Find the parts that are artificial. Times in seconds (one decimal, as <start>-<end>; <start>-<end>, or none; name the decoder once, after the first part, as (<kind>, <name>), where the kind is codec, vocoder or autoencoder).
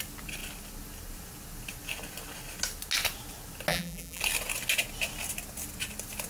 3.7-4.2 (vocoder, BigVGAN v2)